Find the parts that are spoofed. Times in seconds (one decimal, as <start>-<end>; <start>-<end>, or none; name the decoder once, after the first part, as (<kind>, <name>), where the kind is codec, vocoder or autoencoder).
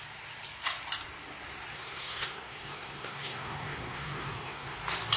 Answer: 1.7-4.8 (codec, SNAC)